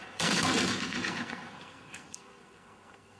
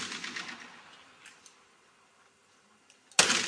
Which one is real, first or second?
second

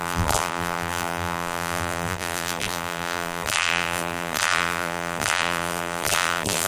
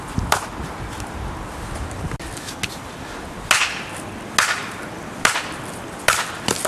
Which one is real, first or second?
second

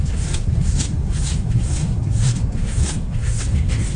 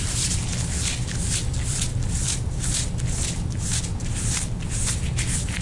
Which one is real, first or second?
second